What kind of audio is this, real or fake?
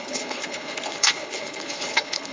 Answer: fake